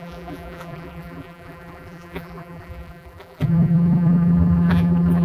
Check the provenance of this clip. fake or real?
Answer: fake